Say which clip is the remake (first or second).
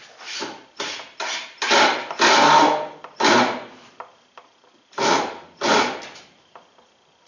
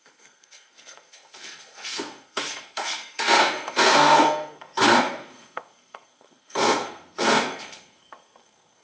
second